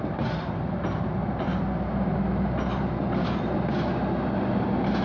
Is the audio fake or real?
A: real